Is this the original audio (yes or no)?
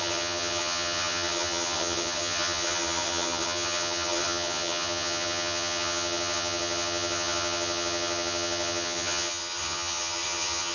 no